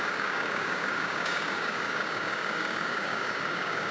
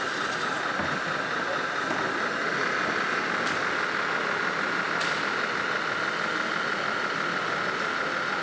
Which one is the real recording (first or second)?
second